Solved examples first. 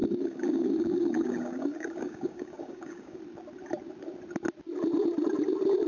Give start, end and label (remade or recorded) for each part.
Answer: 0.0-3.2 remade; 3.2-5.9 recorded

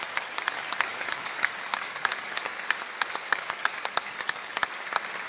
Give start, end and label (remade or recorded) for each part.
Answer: 0.0-2.5 remade; 2.5-3.1 recorded; 3.1-4.6 remade; 4.6-5.3 recorded

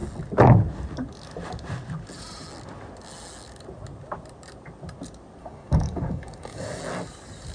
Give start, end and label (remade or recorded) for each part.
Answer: 0.0-5.4 recorded; 5.4-6.8 remade; 6.8-7.5 recorded

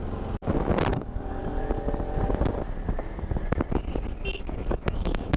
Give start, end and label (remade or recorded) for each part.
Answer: 0.0-0.9 recorded; 0.9-1.4 remade; 1.4-4.3 recorded; 4.3-5.4 remade